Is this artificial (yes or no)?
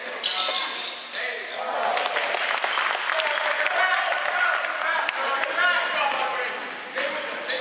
no